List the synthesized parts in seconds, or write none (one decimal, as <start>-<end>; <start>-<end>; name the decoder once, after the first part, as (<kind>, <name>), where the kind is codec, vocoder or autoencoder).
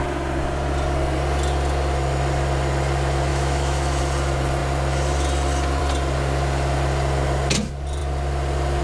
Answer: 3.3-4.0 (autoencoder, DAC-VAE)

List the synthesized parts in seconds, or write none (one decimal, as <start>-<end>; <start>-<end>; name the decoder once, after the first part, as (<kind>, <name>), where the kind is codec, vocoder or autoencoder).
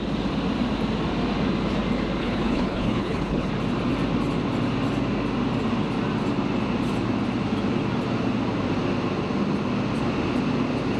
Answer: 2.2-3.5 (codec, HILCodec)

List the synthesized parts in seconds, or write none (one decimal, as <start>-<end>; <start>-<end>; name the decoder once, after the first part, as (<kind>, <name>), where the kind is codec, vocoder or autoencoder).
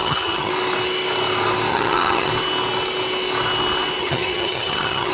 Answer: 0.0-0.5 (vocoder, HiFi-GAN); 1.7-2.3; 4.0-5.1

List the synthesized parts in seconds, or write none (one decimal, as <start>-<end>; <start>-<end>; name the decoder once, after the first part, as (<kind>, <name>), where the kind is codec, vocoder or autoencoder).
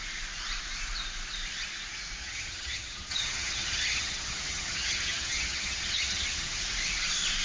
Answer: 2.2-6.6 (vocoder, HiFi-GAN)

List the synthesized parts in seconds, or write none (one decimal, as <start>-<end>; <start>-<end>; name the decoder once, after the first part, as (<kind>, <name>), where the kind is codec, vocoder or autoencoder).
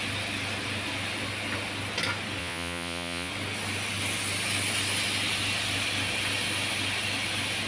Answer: 2.4-3.3 (vocoder, Vocos)